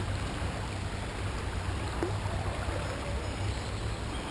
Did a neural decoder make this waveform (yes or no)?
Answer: no